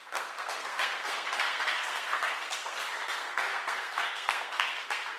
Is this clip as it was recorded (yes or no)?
no